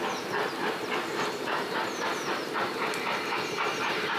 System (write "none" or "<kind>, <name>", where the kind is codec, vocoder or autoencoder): vocoder, BigVGAN v2